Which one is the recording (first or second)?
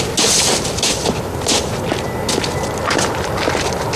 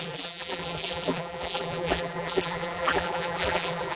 first